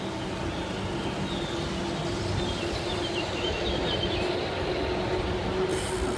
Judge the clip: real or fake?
real